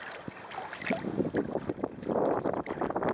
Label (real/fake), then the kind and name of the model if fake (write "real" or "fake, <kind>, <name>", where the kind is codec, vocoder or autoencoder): real